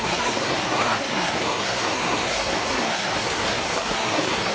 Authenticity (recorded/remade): remade